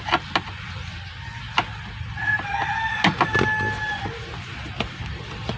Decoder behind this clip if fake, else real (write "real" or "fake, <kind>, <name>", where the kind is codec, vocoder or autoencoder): real